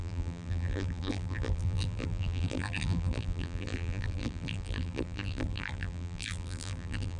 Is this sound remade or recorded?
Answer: remade